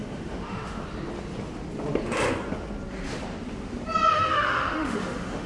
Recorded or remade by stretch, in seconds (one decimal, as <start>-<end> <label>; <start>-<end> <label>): 0.0-0.8 remade; 0.8-4.1 recorded; 4.1-5.5 remade